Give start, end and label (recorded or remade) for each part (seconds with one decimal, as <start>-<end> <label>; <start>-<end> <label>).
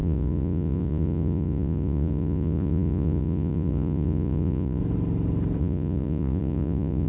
0.0-4.8 remade; 4.8-5.6 recorded; 5.6-7.1 remade